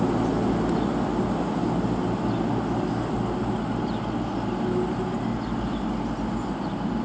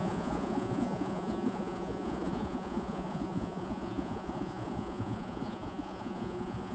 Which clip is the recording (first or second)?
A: first